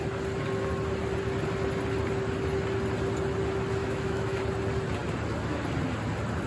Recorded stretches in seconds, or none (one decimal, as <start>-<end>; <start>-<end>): 0.0-3.8; 4.4-6.5

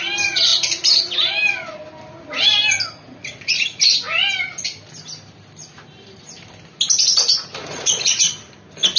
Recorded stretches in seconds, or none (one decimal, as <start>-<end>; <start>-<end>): 0.0-3.2; 3.8-7.6; 8.3-9.0

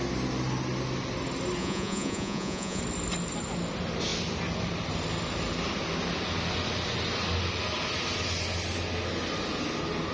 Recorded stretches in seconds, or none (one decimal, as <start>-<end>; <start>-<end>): 0.0-1.6; 2.8-10.1

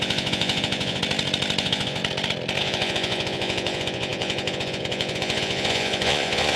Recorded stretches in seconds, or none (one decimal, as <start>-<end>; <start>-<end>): 1.0-1.6; 2.0-2.6

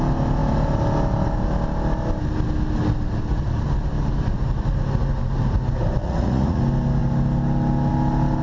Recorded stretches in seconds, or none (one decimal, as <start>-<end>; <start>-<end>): 0.0-6.0; 6.6-8.4

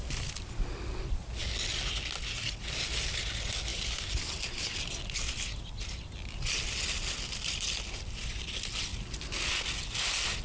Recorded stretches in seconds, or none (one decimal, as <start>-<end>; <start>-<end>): 0.0-10.4